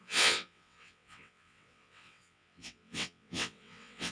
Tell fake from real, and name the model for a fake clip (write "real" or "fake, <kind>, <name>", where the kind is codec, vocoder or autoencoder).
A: fake, vocoder, WaveNeXt